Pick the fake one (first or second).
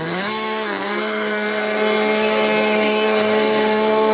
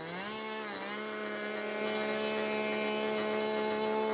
first